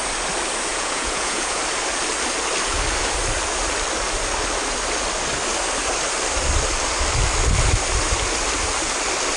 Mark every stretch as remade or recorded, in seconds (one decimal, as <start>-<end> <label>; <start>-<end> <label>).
0.0-0.7 recorded; 0.7-1.6 remade; 1.6-9.4 recorded